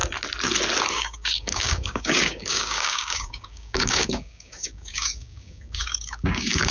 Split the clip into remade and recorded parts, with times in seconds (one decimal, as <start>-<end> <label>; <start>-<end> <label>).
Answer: 0.0-0.9 recorded; 0.9-6.7 remade